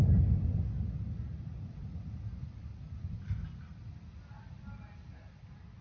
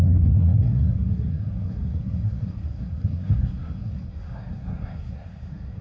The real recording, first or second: first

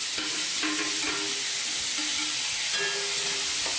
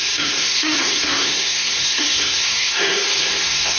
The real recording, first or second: first